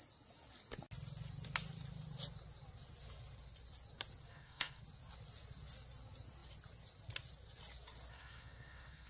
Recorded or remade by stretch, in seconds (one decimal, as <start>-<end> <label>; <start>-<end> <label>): 0.0-4.3 recorded; 4.3-4.8 remade; 4.8-8.1 recorded; 8.1-9.1 remade